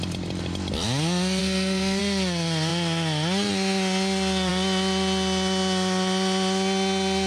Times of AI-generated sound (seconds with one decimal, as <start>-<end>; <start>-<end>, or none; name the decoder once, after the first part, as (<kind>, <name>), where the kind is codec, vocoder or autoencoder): 1.4-2.0 (codec, SNAC)